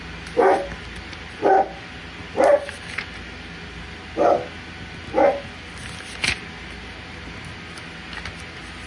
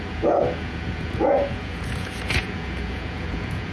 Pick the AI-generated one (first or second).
second